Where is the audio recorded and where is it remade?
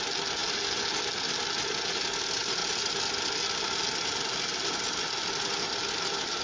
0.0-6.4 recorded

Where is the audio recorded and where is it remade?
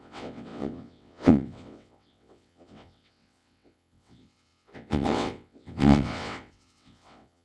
0.0-7.4 remade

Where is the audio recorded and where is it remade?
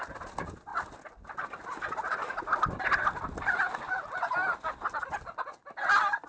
0.0-6.3 recorded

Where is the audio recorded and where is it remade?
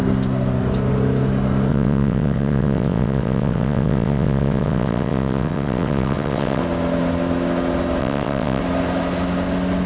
0.0-1.7 recorded; 1.7-6.6 remade; 6.6-8.0 recorded; 8.0-8.6 remade; 8.6-9.9 recorded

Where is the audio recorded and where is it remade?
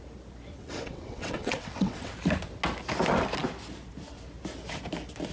0.0-0.6 recorded; 0.6-2.1 remade; 2.1-5.3 recorded